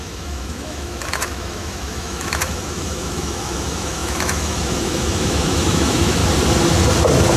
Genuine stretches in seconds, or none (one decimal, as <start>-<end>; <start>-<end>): 6.2-7.4